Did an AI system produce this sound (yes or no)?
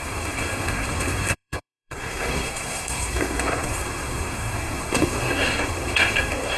yes